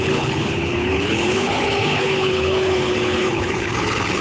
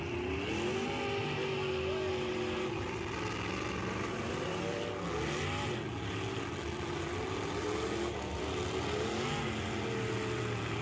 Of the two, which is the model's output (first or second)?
first